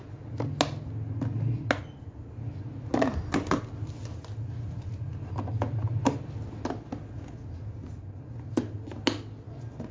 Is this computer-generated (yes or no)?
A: no